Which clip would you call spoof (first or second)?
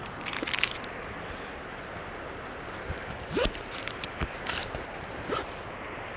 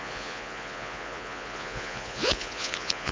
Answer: second